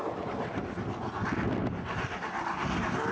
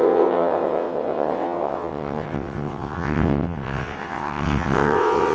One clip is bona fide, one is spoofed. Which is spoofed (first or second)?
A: second